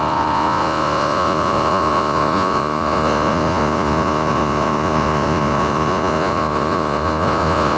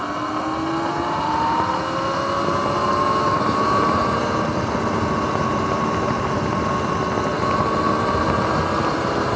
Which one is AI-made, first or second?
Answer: first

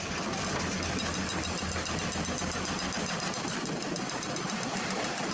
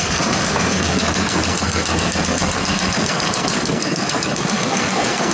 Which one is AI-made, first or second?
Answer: second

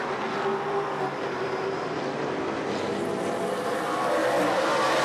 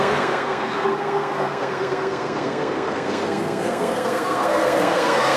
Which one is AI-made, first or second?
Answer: second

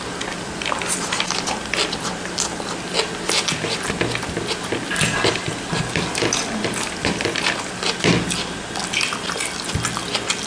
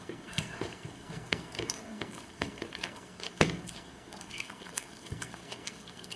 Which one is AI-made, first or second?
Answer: second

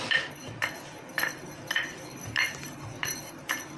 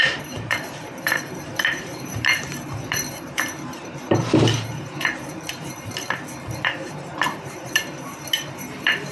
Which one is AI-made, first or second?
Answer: second